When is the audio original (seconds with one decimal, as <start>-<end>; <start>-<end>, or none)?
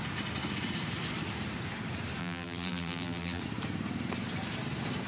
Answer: 0.0-2.2; 3.4-5.1